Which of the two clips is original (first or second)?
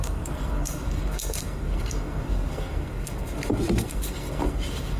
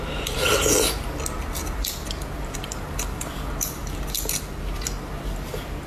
second